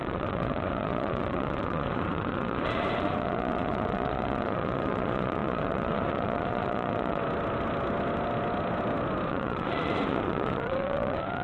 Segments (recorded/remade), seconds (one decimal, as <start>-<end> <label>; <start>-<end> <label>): 0.0-7.2 remade; 7.2-9.3 recorded; 9.3-11.4 remade